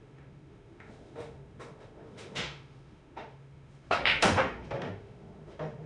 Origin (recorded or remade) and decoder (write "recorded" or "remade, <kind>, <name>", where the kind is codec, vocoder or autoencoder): remade, autoencoder, DAC-VAE